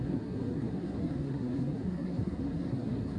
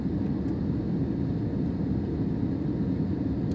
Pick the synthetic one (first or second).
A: first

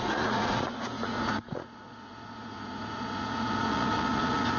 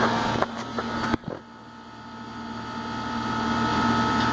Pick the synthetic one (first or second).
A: first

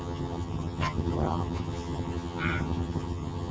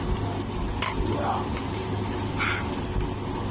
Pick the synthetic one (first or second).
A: first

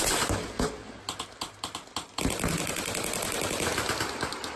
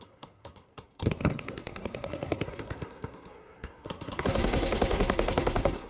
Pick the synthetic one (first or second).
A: second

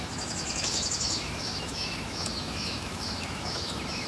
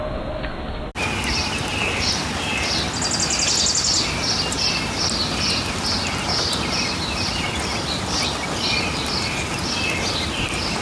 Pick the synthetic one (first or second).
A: first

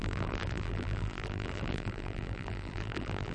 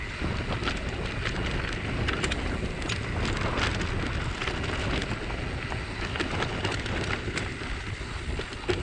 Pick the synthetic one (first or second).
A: first